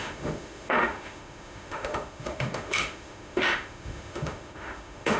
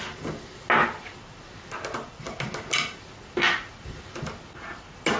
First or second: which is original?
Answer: second